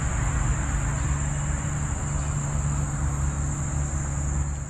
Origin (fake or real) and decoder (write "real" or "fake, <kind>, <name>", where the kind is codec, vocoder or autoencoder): real